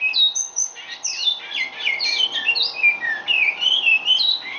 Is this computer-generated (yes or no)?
yes